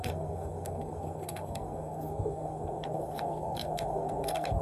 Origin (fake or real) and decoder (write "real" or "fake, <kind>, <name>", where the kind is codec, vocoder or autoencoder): fake, codec, SNAC